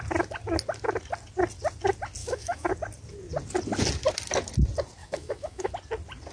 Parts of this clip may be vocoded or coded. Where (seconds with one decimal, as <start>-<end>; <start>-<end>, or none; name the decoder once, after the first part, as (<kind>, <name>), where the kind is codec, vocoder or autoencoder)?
2.2-2.7 (autoencoder, DAC-VAE); 5.0-5.7